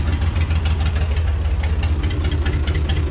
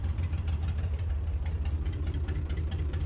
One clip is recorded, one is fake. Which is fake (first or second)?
second